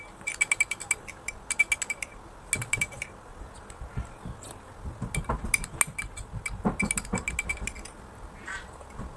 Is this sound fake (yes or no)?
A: no